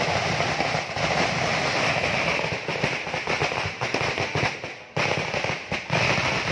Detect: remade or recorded recorded